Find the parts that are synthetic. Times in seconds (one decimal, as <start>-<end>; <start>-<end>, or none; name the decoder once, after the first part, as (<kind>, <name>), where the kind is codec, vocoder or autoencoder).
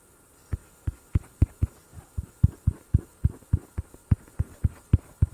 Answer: none